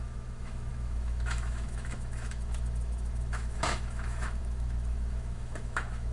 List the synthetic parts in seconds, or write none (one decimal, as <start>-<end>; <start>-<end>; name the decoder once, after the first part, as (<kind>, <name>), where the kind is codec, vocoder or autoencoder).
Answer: 0.0-6.1 (autoencoder, DAC-VAE)